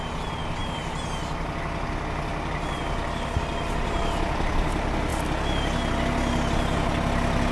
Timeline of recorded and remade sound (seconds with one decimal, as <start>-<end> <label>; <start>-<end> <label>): 0.0-7.5 recorded